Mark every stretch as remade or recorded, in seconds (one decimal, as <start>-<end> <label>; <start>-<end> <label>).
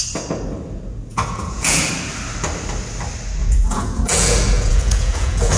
0.0-1.1 recorded; 1.1-1.9 remade; 1.9-3.4 recorded; 3.4-5.6 remade